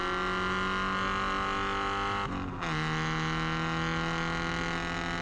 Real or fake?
real